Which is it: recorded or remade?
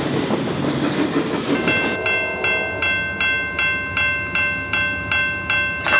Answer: recorded